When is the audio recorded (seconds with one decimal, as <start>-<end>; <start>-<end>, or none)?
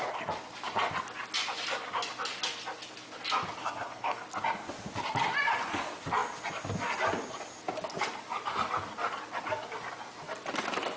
0.0-3.6; 4.2-11.0